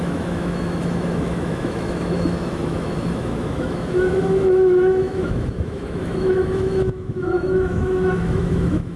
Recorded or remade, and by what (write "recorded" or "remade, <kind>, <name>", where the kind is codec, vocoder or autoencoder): remade, autoencoder, DAC-VAE